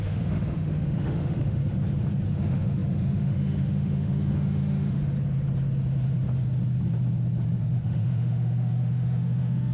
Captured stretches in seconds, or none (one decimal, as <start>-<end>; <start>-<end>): 1.6-2.3; 5.0-7.6